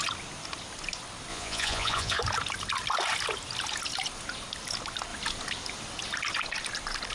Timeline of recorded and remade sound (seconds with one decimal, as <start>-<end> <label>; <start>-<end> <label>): 0.0-1.3 recorded; 1.3-2.2 remade; 2.2-7.1 recorded